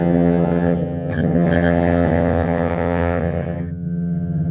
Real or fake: fake